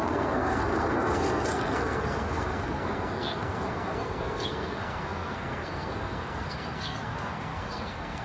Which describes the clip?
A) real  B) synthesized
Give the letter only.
B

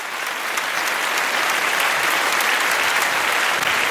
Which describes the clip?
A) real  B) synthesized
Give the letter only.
A